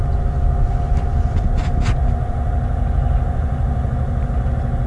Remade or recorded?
recorded